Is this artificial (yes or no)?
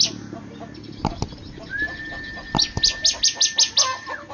no